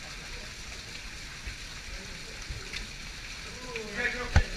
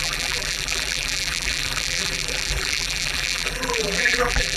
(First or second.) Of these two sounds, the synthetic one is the second